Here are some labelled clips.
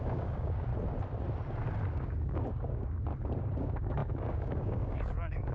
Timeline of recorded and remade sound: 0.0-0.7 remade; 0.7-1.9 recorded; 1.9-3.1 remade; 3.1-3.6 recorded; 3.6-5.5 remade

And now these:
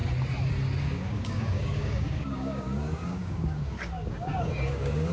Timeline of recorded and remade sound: 0.0-0.8 recorded; 0.8-5.1 remade

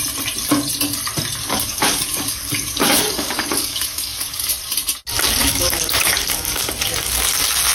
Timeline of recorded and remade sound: 0.0-1.4 recorded; 1.4-4.5 remade; 4.5-5.4 recorded; 5.4-6.7 remade; 6.7-7.7 recorded